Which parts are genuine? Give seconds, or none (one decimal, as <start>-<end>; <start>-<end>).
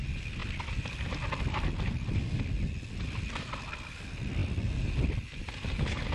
0.0-0.4; 1.2-4.4; 5.6-6.1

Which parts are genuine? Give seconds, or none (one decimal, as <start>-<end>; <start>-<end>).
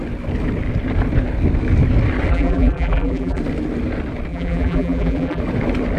0.0-2.3; 3.4-4.3; 5.4-6.0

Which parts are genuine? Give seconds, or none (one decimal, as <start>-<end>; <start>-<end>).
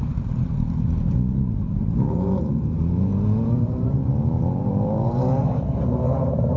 3.1-3.6; 4.0-4.6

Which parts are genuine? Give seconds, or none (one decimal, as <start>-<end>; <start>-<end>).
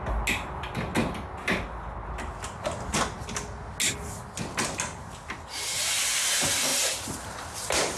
0.0-6.7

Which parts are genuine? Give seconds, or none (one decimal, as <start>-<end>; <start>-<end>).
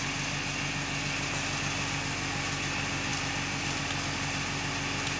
0.0-3.1; 3.8-5.2